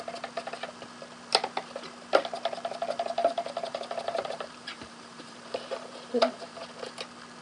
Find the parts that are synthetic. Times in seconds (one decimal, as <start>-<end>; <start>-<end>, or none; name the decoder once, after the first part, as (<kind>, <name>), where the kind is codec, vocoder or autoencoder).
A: 3.2-6.6 (vocoder, BigVGAN v2)